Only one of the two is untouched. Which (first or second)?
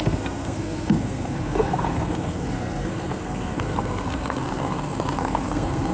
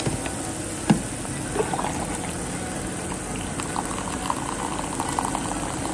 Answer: second